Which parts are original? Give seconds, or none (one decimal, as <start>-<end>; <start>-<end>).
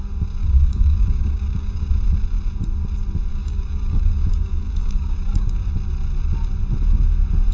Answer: 0.0-0.4; 1.9-3.3; 5.7-7.5